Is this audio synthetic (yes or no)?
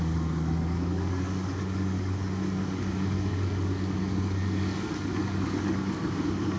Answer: yes